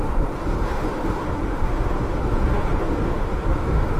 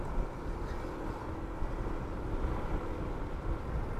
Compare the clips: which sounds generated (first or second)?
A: first